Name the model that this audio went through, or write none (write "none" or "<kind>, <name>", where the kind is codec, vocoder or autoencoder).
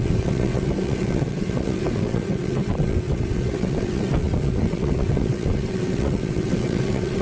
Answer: vocoder, WaveNeXt